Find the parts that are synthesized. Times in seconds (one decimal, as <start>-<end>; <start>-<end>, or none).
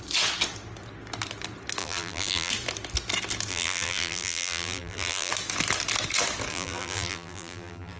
1.8-2.5; 3.5-5.3; 6.5-8.0